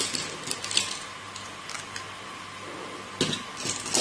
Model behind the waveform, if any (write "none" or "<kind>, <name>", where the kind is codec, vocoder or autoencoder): none